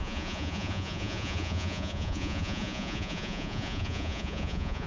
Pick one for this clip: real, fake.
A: fake